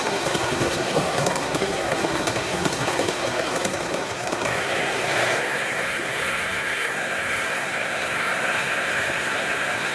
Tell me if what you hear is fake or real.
fake